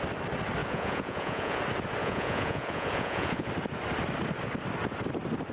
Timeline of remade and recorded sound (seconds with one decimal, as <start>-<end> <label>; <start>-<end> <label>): 0.0-0.6 recorded; 0.6-1.6 remade; 1.6-2.0 recorded; 2.0-3.5 remade; 3.5-5.5 recorded